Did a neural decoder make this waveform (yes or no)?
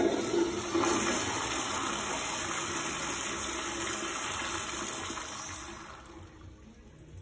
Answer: no